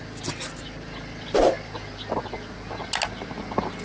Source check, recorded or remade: recorded